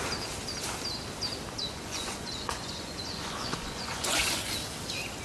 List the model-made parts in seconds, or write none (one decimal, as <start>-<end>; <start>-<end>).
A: 1.6-4.5